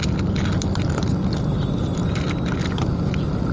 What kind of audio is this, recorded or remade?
recorded